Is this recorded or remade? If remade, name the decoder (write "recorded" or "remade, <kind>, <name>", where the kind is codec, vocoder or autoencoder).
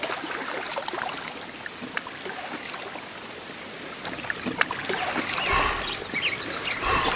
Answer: recorded